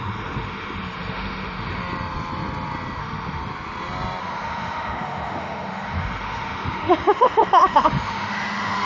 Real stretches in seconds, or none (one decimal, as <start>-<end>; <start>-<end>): 1.8-3.0; 3.4-4.2